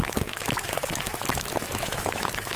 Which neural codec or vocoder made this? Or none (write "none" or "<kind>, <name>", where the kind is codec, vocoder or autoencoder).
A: autoencoder, DAC-VAE